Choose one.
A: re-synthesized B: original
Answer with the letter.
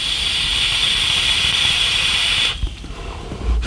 A